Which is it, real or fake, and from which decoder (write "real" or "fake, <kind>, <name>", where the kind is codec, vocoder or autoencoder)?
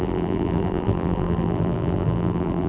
fake, vocoder, BigVGAN v2